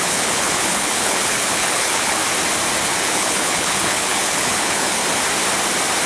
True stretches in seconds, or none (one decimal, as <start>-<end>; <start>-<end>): 2.2-3.0; 5.0-6.1